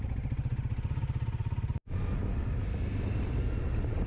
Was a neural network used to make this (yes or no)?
no